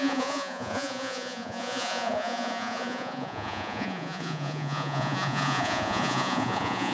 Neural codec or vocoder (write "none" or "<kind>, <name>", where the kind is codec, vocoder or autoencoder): vocoder, Vocos